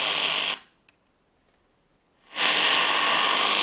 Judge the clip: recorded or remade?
recorded